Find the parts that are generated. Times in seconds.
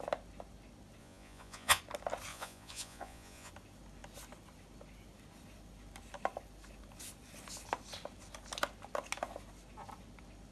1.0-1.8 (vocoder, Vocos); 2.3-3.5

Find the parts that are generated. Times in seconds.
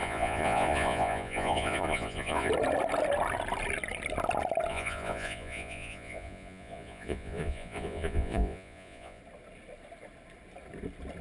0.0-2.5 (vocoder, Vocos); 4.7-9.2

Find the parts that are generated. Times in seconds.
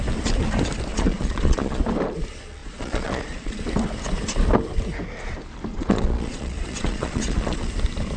0.9-1.8 (vocoder, Vocos); 2.6-3.6; 5.7-7.7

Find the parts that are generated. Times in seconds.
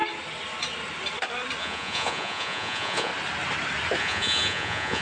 1.6-3.1 (vocoder, Vocos); 4.0-5.0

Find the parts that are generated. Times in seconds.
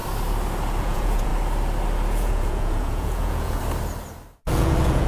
0.8-1.3 (vocoder, Vocos); 2.1-3.6; 4.4-5.1